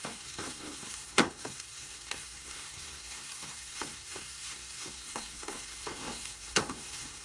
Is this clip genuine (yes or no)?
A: no